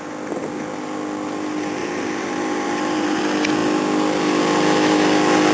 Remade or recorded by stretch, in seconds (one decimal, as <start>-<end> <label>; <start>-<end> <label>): 0.0-1.8 recorded; 1.8-3.2 remade; 3.2-5.5 recorded